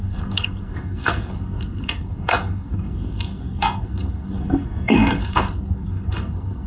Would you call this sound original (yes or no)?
no